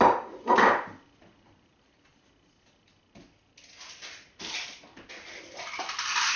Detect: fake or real real